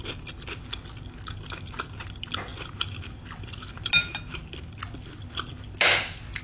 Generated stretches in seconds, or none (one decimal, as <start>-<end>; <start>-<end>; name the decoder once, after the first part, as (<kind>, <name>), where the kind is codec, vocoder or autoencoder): none